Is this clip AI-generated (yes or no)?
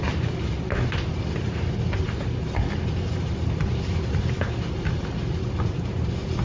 no